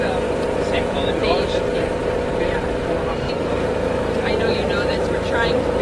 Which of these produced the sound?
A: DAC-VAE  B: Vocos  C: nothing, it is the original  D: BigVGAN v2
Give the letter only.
D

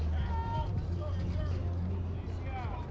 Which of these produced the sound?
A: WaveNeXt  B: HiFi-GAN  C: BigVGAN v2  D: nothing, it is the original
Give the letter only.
D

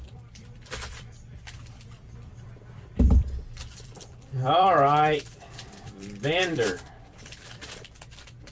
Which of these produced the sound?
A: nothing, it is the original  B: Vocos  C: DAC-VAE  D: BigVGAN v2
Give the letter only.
D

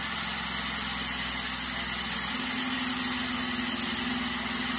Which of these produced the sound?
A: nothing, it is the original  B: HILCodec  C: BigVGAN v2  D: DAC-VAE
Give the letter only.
A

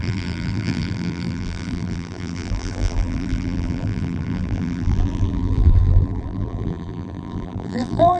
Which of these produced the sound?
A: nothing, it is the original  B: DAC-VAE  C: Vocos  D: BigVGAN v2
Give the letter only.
D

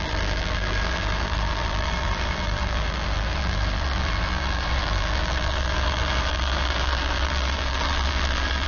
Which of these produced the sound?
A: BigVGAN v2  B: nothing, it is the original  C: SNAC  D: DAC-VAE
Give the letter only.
A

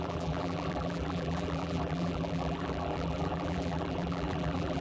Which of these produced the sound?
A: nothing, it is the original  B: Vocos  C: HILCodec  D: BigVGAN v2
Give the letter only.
D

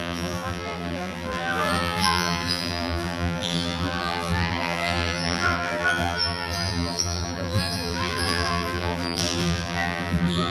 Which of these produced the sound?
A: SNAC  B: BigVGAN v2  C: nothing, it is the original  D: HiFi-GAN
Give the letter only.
B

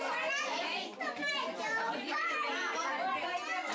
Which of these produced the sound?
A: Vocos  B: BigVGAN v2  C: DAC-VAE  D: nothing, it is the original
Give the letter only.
D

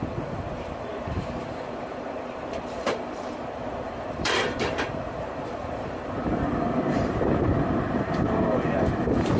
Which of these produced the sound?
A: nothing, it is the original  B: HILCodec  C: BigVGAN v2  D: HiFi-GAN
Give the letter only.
C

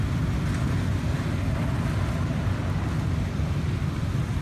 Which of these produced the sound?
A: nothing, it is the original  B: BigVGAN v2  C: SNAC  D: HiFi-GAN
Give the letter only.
A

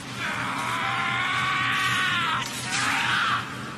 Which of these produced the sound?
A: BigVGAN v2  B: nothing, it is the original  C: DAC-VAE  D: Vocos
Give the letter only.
A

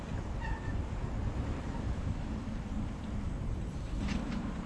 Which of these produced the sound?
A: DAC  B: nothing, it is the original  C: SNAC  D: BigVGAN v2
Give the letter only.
D